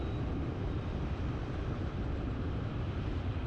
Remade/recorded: remade